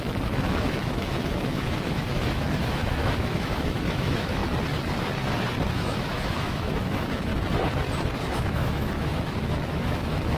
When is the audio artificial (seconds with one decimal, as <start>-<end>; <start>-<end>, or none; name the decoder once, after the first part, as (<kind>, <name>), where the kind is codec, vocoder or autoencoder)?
0.0-4.4 (autoencoder, DAC-VAE); 5.7-7.3; 8.2-10.4